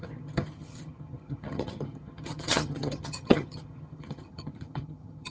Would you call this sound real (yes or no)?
no